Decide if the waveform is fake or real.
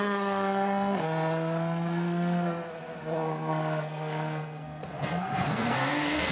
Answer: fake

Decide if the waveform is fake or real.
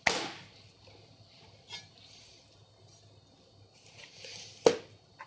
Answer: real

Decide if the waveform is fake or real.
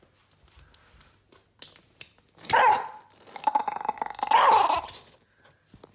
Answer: real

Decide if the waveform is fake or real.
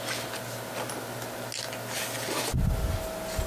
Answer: real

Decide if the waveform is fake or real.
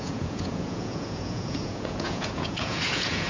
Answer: fake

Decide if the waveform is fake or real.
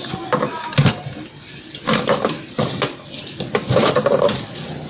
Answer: real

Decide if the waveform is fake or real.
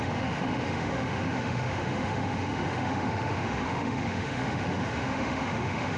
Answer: fake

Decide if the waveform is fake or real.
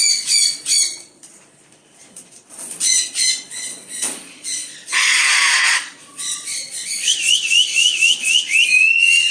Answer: fake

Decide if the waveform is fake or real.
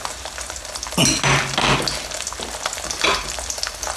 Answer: real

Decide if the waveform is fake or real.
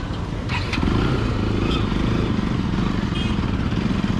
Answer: fake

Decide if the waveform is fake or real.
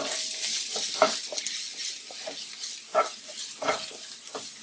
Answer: real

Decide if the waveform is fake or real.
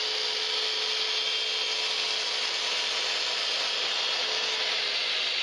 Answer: real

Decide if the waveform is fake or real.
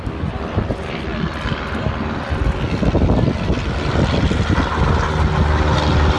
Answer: real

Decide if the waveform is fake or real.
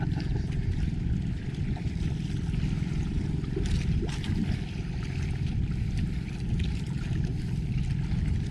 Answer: real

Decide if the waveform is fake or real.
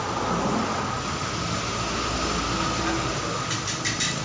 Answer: real